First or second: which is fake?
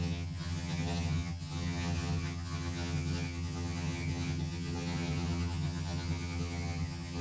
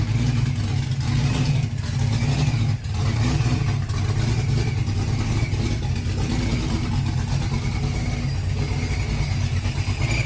first